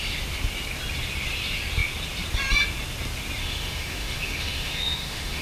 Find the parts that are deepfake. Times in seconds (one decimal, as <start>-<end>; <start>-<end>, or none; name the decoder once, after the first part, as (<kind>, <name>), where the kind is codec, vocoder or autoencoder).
3.4-5.4 (autoencoder, DAC-VAE)